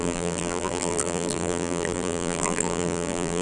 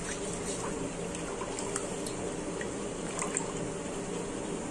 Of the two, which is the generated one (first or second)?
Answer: first